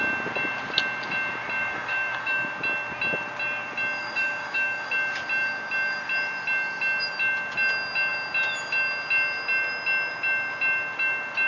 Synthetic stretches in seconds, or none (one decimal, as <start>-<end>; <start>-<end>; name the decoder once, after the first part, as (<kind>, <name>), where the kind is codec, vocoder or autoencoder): 1.6-2.5 (autoencoder, DAC-VAE); 4.0-4.9